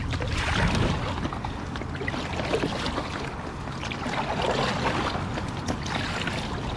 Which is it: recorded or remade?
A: recorded